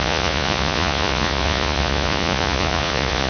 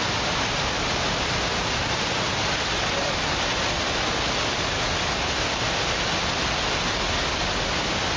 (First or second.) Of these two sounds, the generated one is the first